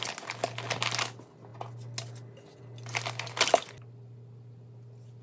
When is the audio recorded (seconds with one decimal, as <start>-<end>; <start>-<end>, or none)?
0.0-5.2